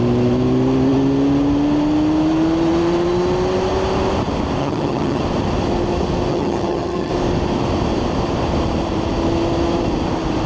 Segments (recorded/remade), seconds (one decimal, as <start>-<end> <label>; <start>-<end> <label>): 0.0-4.6 recorded; 4.6-5.2 remade; 5.2-6.3 recorded; 6.3-7.1 remade; 7.1-10.5 recorded